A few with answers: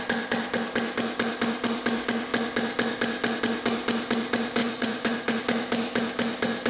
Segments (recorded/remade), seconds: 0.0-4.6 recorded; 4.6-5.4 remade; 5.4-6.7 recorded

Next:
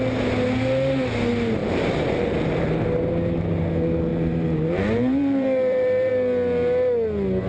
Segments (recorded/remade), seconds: 0.0-1.6 recorded; 1.6-2.6 remade; 2.6-4.1 recorded; 4.1-6.1 remade; 6.1-7.5 recorded

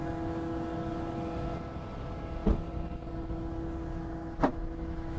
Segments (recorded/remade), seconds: 0.0-4.5 recorded; 4.5-5.2 remade

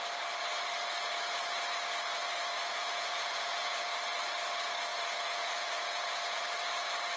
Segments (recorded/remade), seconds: 0.0-2.6 recorded; 2.6-3.8 remade; 3.8-4.9 recorded; 4.9-6.4 remade; 6.4-7.2 recorded

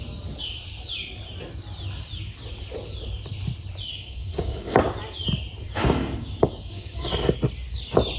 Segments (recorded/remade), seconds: 0.0-3.9 recorded; 3.9-4.9 remade; 4.9-5.8 recorded; 5.8-7.1 remade; 7.1-8.2 recorded

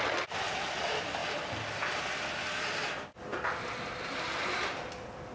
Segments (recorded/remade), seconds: 0.0-3.3 remade; 3.3-4.4 recorded; 4.4-5.3 remade

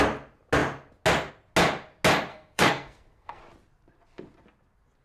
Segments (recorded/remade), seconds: 0.0-2.3 recorded; 2.3-3.4 remade; 3.4-5.0 recorded

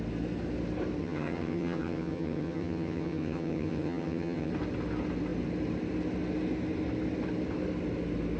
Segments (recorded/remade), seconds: 0.0-1.0 recorded; 1.0-4.5 remade; 4.5-8.4 recorded